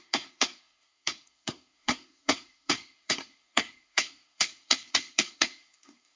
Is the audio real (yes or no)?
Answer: no